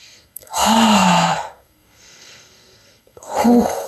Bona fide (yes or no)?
no